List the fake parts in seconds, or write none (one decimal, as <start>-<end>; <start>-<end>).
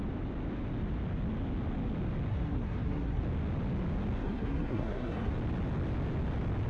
2.3-3.2; 4.2-5.3